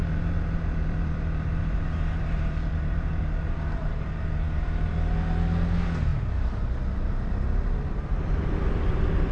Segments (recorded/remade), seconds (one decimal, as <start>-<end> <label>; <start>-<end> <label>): 0.0-4.3 remade; 4.3-9.3 recorded